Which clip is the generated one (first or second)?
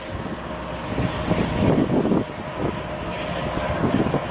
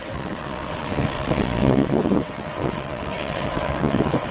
second